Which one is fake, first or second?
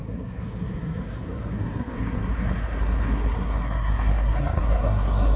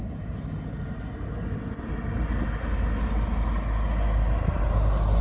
first